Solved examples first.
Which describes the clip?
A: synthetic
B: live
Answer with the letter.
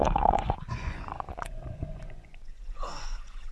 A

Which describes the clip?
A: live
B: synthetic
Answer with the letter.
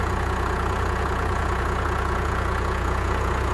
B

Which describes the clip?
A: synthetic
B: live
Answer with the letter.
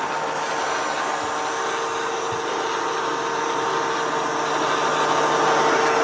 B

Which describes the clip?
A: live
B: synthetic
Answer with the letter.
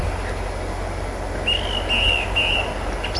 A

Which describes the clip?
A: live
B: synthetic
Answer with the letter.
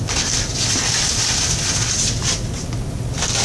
A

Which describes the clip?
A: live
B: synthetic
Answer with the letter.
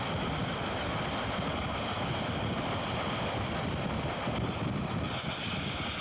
A